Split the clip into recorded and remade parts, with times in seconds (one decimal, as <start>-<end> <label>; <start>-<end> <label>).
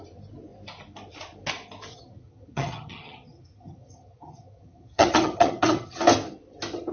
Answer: 0.0-1.9 recorded; 1.9-6.0 remade; 6.0-6.9 recorded